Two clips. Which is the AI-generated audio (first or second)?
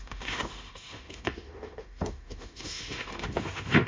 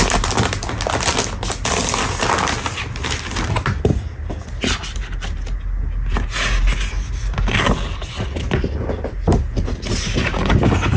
first